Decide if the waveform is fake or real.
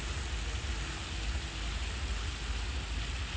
real